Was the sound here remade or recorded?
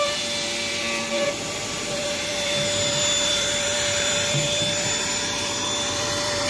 remade